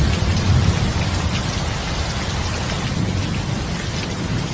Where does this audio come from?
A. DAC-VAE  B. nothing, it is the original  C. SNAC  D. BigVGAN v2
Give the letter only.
B